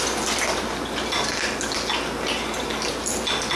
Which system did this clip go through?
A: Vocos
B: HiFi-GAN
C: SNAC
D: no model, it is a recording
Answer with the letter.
D